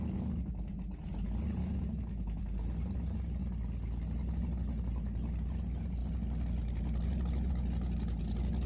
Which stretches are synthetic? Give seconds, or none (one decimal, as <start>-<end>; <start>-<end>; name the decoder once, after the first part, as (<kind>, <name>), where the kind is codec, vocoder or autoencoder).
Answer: 1.6-2.4 (autoencoder, DAC-VAE)